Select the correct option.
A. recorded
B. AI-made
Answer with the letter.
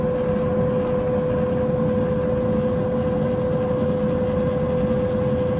A